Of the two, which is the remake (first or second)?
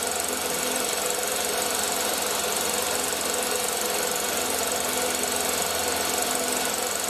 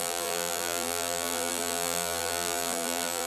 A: second